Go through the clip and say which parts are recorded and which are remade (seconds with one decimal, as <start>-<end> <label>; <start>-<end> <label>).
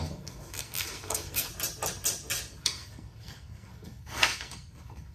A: 0.0-1.5 remade; 1.5-2.5 recorded; 2.5-5.1 remade